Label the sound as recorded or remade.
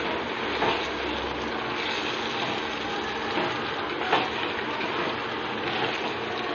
recorded